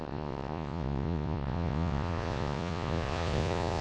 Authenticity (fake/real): fake